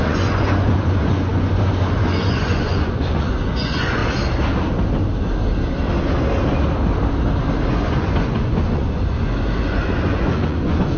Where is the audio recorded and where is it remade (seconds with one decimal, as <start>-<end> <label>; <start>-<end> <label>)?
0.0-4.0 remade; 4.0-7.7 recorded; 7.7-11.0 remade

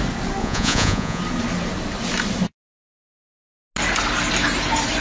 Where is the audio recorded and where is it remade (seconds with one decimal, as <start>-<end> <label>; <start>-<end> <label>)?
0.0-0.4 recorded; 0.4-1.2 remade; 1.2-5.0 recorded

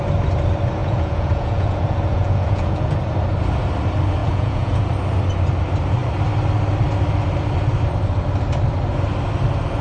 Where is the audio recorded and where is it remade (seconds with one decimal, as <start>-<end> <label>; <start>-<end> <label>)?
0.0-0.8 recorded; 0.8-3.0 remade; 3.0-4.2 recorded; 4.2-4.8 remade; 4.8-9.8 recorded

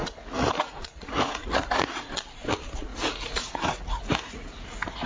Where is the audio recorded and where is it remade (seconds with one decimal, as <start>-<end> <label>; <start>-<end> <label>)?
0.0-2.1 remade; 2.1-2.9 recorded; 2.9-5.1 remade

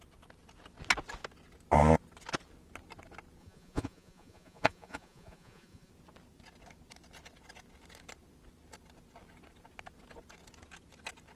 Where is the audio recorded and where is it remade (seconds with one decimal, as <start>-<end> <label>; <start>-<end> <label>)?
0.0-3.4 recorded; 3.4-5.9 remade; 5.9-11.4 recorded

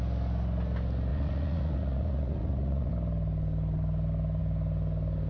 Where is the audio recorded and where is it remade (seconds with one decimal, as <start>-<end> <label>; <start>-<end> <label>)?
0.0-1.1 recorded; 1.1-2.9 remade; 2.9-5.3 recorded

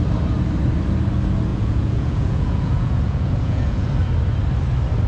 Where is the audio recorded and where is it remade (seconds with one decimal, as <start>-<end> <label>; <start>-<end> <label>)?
0.0-1.5 recorded; 1.5-3.9 remade; 3.9-5.1 recorded

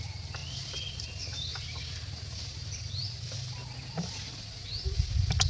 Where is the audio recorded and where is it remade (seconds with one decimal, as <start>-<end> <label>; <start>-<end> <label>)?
0.0-5.5 recorded